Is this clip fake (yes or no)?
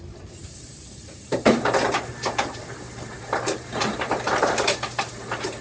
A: yes